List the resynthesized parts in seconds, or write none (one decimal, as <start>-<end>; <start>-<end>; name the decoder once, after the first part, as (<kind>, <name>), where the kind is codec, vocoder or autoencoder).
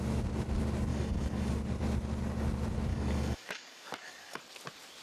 0.9-1.5 (codec, DAC); 2.9-4.4